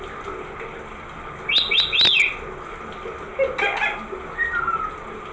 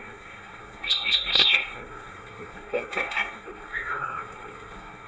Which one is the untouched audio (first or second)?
first